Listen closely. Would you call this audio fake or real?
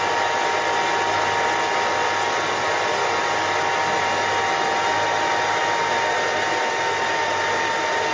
real